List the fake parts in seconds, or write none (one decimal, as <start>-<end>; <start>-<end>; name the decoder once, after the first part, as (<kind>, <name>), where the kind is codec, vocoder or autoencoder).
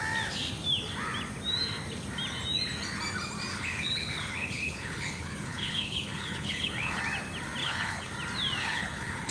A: 3.5-7.0 (codec, HILCodec); 7.6-8.1; 8.6-9.3